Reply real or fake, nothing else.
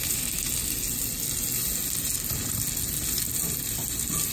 real